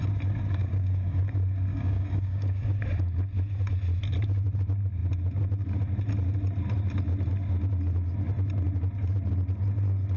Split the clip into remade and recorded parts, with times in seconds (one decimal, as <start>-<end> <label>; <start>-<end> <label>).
0.0-0.6 recorded; 0.6-1.2 remade; 1.2-1.7 recorded; 1.7-2.7 remade; 2.7-10.2 recorded